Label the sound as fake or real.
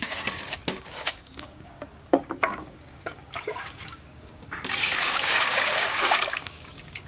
fake